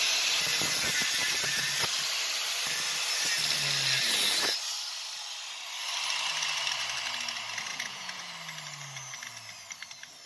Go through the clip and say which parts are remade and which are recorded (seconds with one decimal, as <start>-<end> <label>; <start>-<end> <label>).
0.0-7.7 recorded; 7.7-8.3 remade; 8.3-10.3 recorded